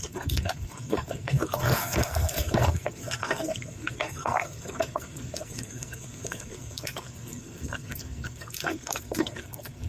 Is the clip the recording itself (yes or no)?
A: no